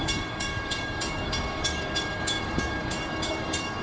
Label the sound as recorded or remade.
remade